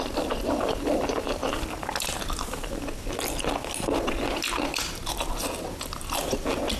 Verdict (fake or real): real